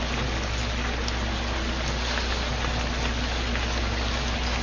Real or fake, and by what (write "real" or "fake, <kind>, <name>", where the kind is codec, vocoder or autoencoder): real